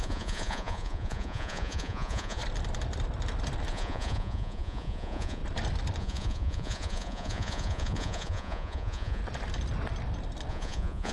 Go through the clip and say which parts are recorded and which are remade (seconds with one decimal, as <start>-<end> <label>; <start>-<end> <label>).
0.0-2.4 remade; 2.4-3.7 recorded; 3.7-5.4 remade; 5.4-6.0 recorded; 6.0-9.2 remade; 9.2-10.5 recorded; 10.5-11.1 remade